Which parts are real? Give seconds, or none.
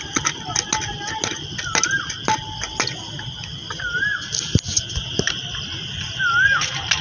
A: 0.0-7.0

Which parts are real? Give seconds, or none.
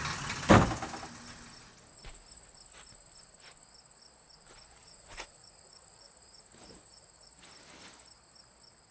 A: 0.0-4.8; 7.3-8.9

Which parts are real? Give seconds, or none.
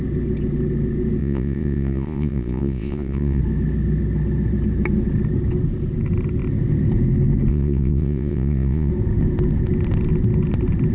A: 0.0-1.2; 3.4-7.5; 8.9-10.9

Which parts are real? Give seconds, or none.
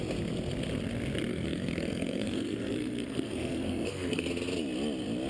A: 0.0-1.3; 4.3-5.3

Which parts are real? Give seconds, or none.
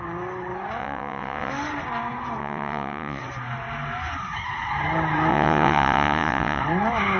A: 0.0-0.8; 1.5-2.4; 3.2-5.3; 6.6-7.2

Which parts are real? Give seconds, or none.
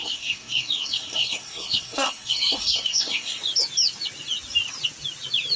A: 3.4-5.6